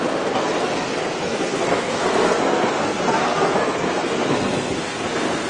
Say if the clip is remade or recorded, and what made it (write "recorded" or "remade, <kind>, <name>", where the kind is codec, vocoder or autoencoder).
remade, codec, SNAC